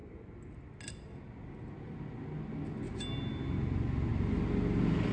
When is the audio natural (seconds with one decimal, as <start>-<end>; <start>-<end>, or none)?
0.0-5.1